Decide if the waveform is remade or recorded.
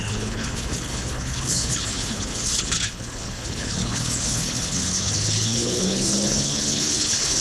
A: remade